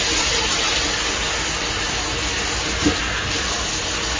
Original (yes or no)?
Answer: yes